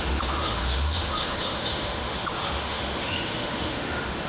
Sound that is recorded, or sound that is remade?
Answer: remade